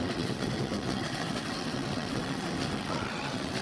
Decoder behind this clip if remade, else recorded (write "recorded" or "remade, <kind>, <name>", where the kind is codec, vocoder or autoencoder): remade, vocoder, WaveNeXt